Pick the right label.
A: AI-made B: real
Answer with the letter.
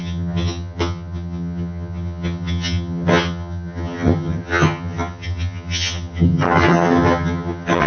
A